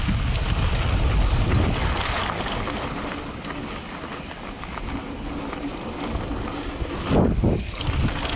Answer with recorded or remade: recorded